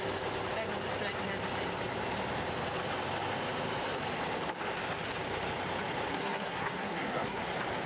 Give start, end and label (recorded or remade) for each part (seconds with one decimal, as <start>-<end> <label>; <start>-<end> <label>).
0.0-6.1 recorded; 6.1-7.4 remade; 7.4-7.9 recorded